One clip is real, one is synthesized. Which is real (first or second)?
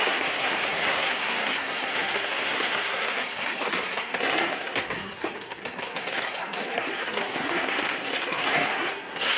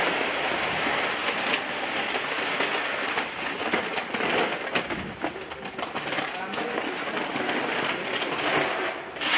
second